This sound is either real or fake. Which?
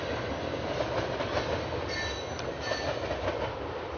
real